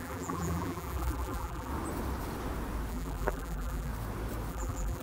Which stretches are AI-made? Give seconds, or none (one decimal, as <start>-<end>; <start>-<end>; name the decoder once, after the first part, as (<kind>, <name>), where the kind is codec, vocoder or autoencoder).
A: 0.0-1.7 (vocoder, BigVGAN v2); 2.9-3.9; 4.5-5.0